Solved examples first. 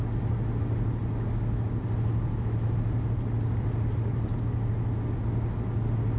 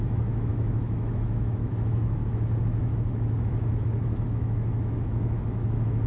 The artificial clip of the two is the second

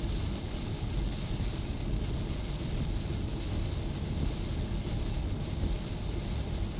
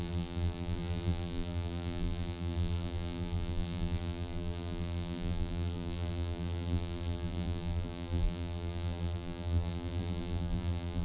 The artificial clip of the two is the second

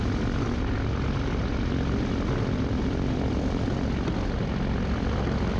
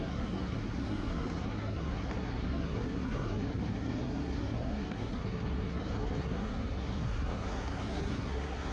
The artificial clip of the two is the second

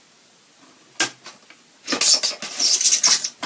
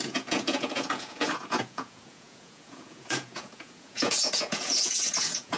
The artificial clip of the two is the second